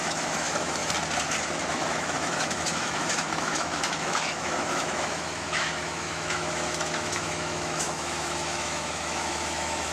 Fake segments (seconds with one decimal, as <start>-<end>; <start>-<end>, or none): 0.0-0.8; 1.7-9.9